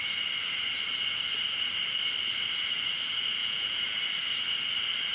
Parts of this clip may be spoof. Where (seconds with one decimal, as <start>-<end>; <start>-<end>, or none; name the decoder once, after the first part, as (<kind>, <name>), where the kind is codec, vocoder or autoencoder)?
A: 3.4-4.0 (vocoder, Vocos)